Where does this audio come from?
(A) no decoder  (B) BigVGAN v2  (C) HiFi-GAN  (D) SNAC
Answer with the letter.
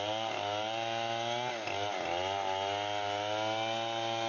A